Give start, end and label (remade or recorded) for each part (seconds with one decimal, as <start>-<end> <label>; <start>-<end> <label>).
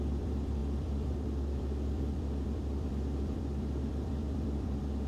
0.0-5.1 remade